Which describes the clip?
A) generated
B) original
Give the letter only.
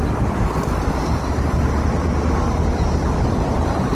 B